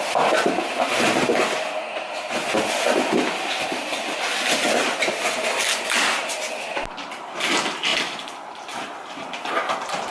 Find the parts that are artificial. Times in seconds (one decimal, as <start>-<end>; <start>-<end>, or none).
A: none